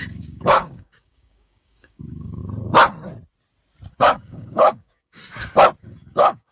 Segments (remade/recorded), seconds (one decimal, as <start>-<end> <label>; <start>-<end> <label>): 0.0-2.4 remade; 2.4-3.9 recorded; 3.9-5.2 remade; 5.2-5.8 recorded; 5.8-6.5 remade